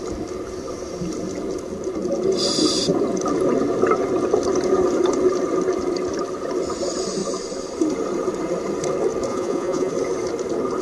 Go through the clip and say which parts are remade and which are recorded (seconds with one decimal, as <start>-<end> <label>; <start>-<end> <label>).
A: 0.0-9.3 recorded; 9.3-9.9 remade; 9.9-10.8 recorded